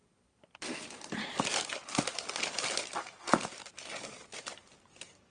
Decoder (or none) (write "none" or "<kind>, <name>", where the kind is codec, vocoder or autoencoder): none